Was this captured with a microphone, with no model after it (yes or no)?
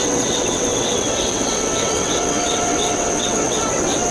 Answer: no